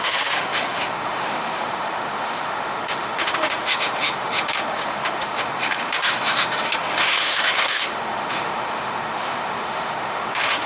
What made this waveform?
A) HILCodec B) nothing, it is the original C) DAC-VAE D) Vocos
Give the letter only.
C